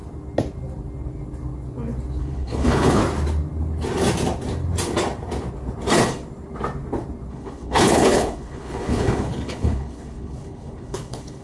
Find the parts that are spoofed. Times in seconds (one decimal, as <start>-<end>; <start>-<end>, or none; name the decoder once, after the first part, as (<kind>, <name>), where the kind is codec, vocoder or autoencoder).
2.2-3.0 (codec, HILCodec); 7.3-11.4

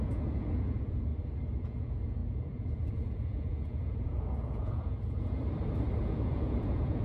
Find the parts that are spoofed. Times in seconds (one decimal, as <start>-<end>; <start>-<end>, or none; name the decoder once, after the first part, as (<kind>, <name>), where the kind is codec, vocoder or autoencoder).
0.0-1.1 (vocoder, Vocos); 1.6-5.4; 6.0-7.0

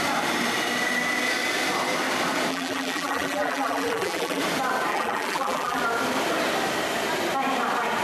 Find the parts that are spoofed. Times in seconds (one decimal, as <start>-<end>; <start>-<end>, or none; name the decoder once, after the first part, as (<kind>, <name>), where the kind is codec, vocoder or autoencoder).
2.5-4.4 (vocoder, BigVGAN v2); 4.9-5.8